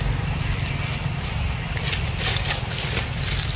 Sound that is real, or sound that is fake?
real